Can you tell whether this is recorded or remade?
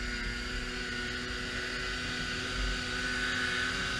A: recorded